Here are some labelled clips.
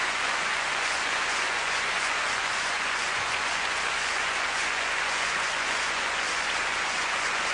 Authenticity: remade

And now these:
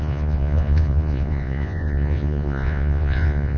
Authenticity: remade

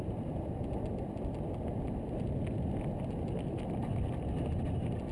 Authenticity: recorded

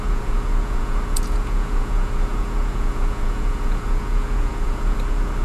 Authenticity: remade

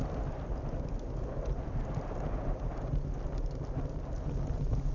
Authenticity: recorded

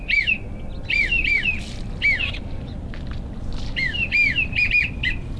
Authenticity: recorded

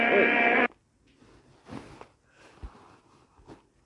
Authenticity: recorded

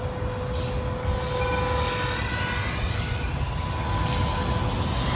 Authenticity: recorded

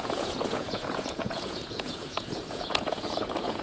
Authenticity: remade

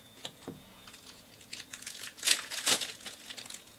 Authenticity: remade